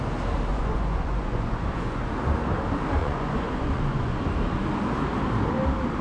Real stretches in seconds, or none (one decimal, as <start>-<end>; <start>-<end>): 0.0-0.5; 2.1-3.0; 4.2-6.0